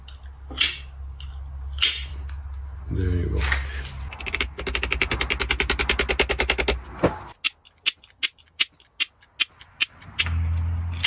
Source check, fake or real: real